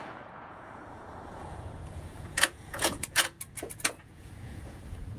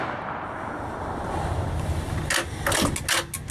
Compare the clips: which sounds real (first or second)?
second